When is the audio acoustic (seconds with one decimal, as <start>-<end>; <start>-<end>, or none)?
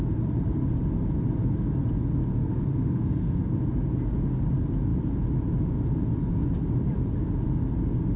0.0-2.3; 3.4-8.2